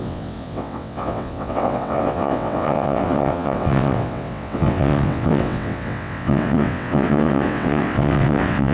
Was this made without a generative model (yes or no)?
no